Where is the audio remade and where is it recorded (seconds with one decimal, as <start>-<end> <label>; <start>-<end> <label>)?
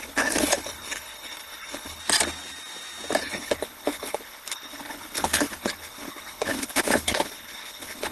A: 0.0-2.0 remade; 2.0-3.2 recorded; 3.2-8.1 remade